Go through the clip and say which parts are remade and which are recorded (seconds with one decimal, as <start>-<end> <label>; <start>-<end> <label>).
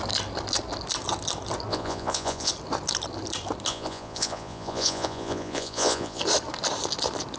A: 0.0-1.7 recorded; 1.7-2.5 remade; 2.5-3.7 recorded; 3.7-6.2 remade; 6.2-7.4 recorded